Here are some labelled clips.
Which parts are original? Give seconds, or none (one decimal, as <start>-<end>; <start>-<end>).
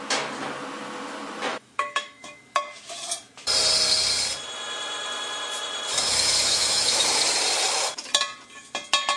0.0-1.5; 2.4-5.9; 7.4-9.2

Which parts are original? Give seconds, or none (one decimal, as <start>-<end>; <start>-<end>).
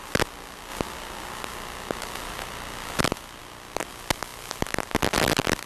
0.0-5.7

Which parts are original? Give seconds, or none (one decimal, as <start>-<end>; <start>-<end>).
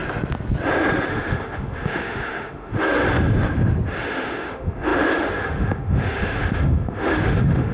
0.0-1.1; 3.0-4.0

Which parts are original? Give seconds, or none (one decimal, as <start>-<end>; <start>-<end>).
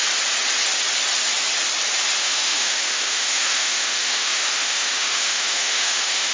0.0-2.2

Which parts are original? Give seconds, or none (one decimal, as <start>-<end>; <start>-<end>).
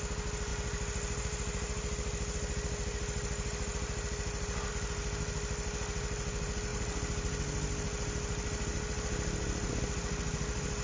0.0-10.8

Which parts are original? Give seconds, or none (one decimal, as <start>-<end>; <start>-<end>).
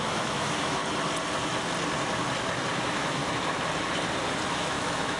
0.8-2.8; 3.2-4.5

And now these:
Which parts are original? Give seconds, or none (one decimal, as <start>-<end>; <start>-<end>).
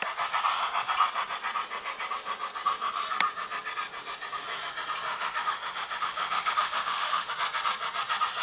0.0-5.1; 7.3-8.4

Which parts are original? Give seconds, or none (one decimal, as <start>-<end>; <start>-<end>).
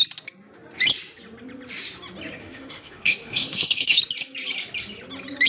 0.0-2.4; 4.0-5.5